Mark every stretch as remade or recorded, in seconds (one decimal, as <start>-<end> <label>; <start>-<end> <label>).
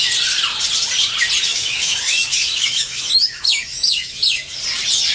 0.0-1.5 recorded; 1.5-4.6 remade; 4.6-5.1 recorded